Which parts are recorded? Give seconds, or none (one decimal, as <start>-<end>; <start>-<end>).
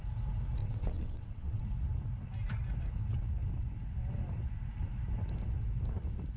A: 0.0-0.6; 1.6-6.4